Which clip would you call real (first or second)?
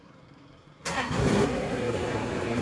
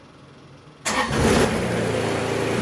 second